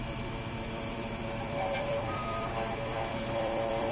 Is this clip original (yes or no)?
no